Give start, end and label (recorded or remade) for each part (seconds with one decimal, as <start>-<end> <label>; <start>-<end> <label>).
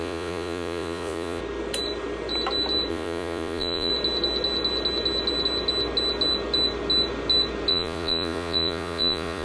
0.0-1.4 remade; 1.4-2.9 recorded; 2.9-3.9 remade; 3.9-7.7 recorded; 7.7-9.4 remade